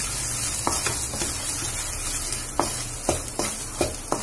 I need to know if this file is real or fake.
real